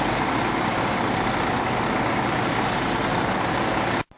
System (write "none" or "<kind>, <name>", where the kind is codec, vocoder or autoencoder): none